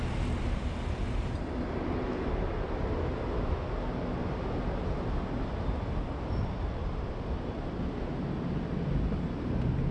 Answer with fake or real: real